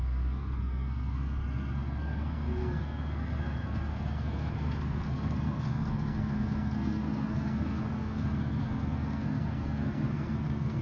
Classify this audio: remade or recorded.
remade